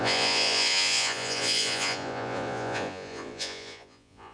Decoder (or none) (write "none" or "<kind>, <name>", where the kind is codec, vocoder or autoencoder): vocoder, Vocos